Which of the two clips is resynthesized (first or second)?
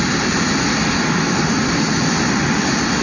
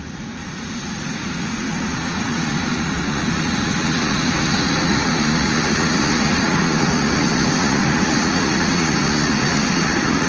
second